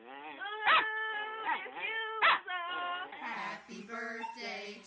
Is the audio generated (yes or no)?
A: no